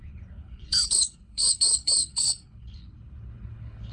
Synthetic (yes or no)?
yes